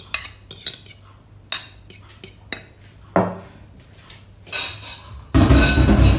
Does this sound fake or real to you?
real